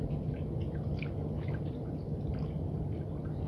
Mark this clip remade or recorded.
recorded